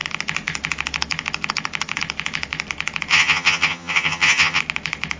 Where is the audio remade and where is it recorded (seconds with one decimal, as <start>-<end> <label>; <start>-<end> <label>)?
0.0-3.1 recorded; 3.1-4.6 remade; 4.6-5.2 recorded

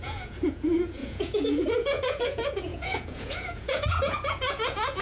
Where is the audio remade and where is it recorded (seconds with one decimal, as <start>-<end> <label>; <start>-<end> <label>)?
0.0-5.0 remade

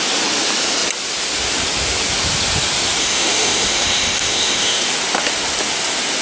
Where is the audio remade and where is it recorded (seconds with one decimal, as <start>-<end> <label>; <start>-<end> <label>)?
0.0-3.0 recorded; 3.0-4.8 remade; 4.8-6.2 recorded

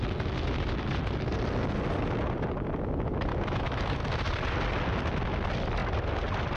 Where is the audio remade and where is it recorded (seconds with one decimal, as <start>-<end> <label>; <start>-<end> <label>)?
0.0-3.3 recorded; 3.3-4.1 remade; 4.1-6.6 recorded

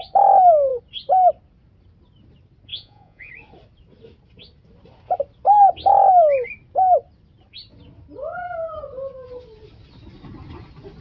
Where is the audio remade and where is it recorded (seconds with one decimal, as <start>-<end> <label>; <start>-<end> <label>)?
0.0-2.7 recorded; 2.7-3.3 remade; 3.3-11.0 recorded

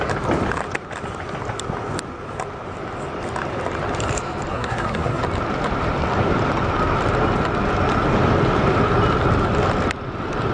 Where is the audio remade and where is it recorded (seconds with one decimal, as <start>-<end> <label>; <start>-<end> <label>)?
0.0-4.5 recorded; 4.5-5.2 remade; 5.2-10.5 recorded

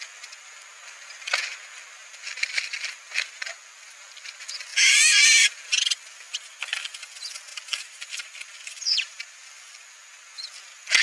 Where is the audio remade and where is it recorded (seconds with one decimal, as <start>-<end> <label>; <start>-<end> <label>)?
0.0-2.0 recorded; 2.0-2.9 remade; 2.9-7.5 recorded; 7.5-9.6 remade; 9.6-11.0 recorded